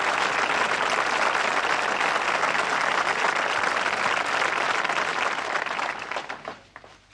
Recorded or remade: recorded